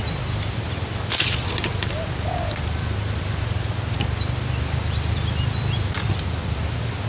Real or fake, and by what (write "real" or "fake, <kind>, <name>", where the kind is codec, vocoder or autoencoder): real